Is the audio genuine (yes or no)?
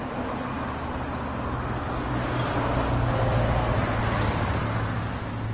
yes